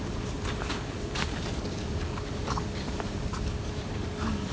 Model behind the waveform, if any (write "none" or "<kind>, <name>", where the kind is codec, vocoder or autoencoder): codec, DAC